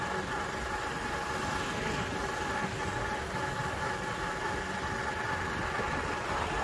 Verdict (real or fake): real